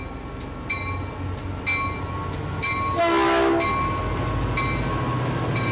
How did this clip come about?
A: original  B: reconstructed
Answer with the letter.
A